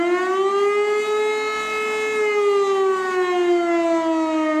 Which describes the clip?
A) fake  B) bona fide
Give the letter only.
B